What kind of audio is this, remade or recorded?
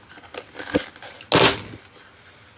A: recorded